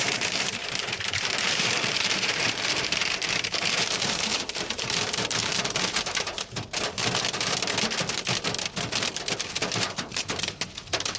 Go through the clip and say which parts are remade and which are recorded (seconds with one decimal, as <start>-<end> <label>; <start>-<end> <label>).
0.0-7.0 remade; 7.0-9.5 recorded; 9.5-11.2 remade